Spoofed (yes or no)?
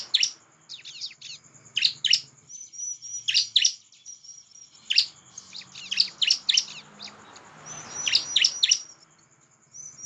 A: no